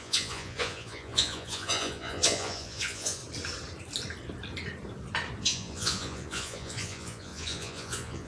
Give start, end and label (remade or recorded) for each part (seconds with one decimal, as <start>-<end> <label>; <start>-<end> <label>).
0.0-3.2 remade; 3.2-5.4 recorded; 5.4-8.3 remade